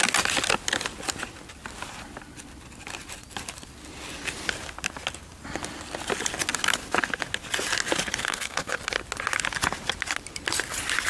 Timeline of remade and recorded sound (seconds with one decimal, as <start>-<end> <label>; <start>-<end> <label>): 0.0-8.2 recorded; 8.2-8.8 remade; 8.8-11.1 recorded